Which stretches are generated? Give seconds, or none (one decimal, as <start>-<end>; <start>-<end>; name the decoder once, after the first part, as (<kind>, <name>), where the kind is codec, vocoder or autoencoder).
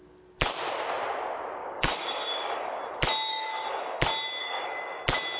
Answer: 1.6-2.8 (codec, DAC); 3.3-4.0; 4.4-5.0